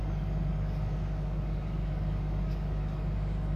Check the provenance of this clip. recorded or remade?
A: remade